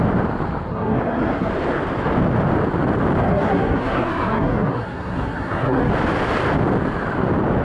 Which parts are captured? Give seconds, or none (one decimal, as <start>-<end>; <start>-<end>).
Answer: 0.0-0.7; 1.5-3.2; 5.9-7.6